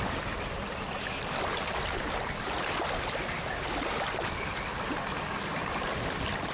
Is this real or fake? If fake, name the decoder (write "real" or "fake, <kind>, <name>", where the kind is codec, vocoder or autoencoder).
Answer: real